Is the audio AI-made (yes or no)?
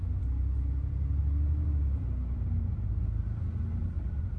no